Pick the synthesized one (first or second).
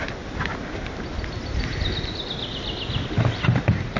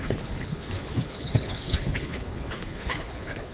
second